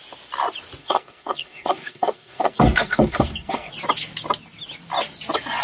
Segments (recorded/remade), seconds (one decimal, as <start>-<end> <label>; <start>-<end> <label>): 0.0-0.8 recorded; 0.8-3.7 remade; 3.7-5.6 recorded